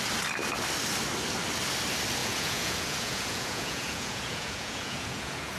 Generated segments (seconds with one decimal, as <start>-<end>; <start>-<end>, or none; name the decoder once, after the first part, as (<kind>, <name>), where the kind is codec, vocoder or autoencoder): 2.2-5.6 (vocoder, Vocos)